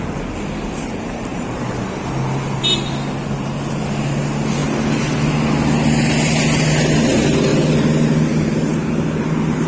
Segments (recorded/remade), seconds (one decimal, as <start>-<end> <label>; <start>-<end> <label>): 0.0-1.3 recorded; 1.3-2.6 remade; 2.6-9.7 recorded